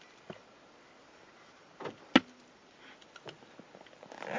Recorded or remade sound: recorded